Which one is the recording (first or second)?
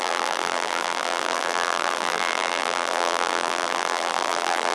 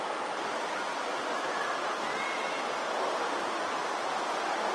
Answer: second